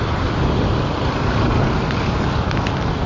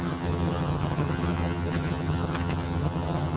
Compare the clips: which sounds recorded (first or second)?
first